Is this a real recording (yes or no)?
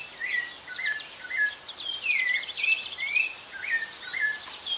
yes